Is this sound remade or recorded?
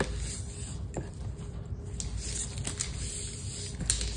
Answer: recorded